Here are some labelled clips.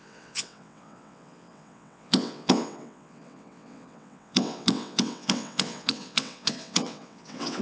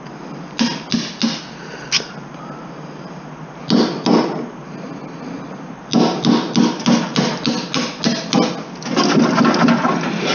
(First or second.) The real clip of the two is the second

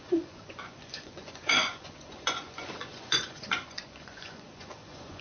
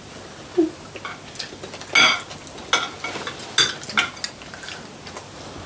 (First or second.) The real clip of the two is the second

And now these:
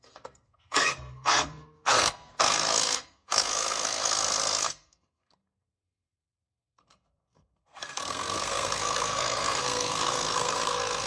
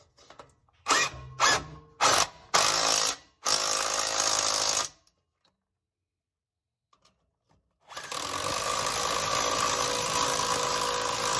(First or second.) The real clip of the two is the second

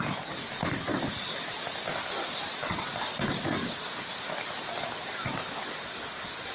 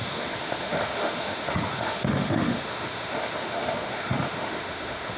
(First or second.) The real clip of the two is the first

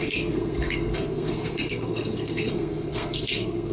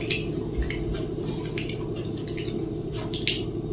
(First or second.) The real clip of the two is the second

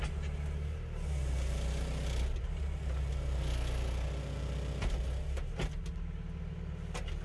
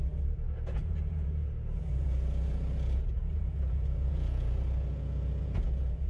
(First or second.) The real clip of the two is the first